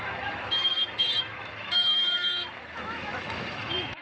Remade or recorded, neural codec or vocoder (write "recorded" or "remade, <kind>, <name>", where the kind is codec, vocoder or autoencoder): remade, autoencoder, DAC-VAE